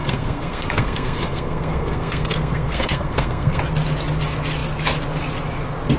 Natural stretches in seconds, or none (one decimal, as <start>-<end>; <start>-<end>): 3.6-6.0